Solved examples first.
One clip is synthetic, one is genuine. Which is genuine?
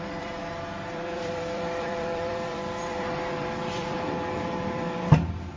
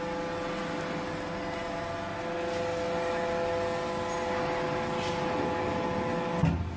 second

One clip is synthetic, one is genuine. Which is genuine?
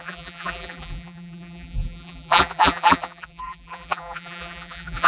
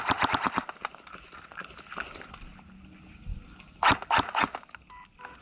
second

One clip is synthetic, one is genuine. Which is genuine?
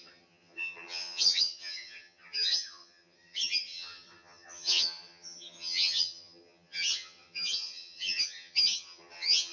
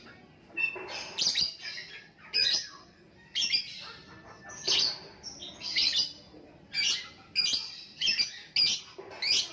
second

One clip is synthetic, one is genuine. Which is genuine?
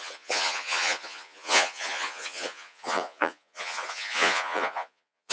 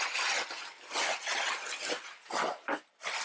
second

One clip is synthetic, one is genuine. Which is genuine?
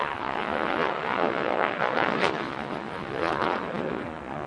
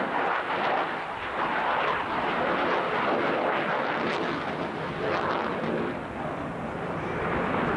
second